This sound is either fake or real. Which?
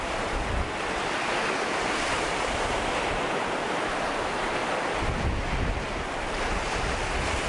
real